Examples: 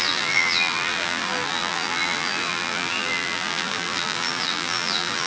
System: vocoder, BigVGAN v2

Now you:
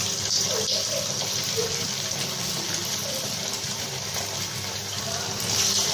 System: vocoder, BigVGAN v2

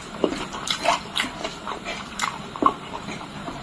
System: vocoder, BigVGAN v2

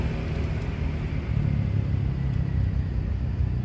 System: none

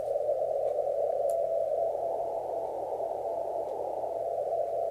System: vocoder, BigVGAN v2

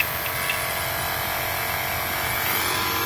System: none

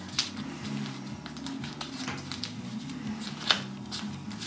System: none